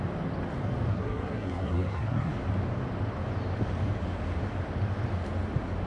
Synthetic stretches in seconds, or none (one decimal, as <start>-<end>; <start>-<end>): 0.9-2.3